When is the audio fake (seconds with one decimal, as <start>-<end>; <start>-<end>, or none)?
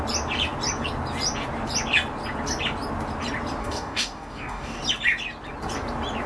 3.6-4.8